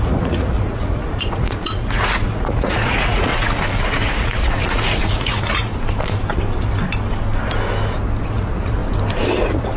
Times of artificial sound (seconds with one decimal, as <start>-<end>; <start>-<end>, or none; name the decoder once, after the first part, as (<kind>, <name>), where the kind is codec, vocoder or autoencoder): 0.0-5.7 (vocoder, Vocos); 8.3-8.8; 9.4-9.8